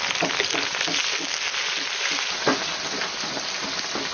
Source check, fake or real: real